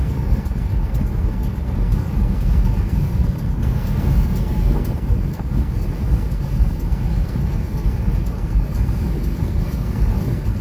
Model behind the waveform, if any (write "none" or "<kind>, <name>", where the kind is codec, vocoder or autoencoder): codec, SNAC